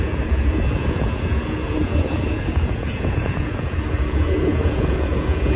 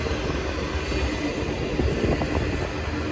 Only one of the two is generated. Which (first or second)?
first